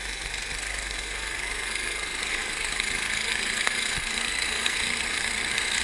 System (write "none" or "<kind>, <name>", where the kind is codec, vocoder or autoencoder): codec, SNAC